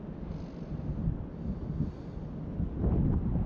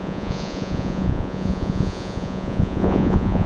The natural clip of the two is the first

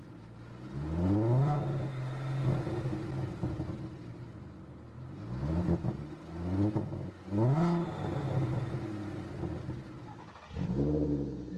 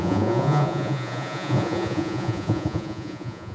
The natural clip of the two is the first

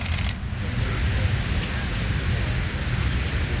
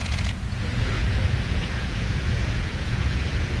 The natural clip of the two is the first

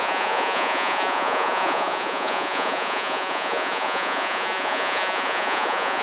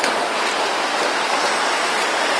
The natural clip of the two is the second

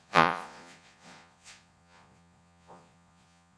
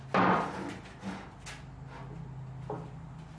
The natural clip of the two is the second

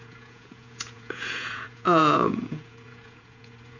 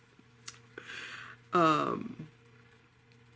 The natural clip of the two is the second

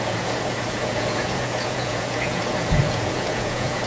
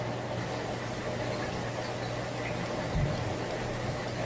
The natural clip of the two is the second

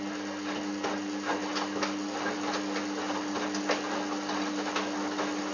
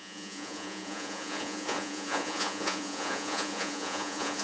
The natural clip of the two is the first